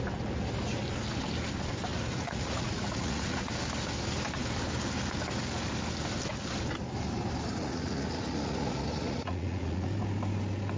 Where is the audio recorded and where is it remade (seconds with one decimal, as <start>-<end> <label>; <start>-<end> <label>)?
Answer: 0.0-1.9 recorded; 1.9-3.5 remade; 3.5-7.6 recorded; 7.6-9.9 remade; 9.9-10.8 recorded